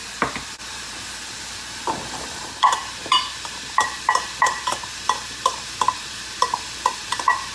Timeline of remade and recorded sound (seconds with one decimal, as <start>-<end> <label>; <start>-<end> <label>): 0.0-7.5 remade